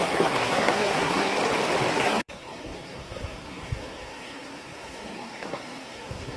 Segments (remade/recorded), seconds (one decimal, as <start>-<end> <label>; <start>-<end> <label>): 0.0-1.4 remade; 1.4-1.9 recorded; 1.9-6.4 remade